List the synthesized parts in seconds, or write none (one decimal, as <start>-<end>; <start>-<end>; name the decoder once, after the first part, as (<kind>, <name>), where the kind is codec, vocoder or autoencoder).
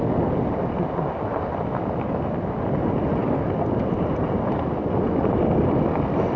none